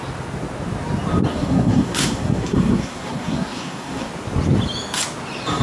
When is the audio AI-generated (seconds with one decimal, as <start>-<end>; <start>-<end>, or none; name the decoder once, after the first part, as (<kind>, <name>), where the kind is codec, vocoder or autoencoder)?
1.3-4.1 (codec, SNAC)